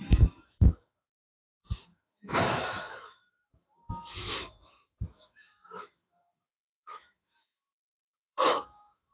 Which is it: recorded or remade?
remade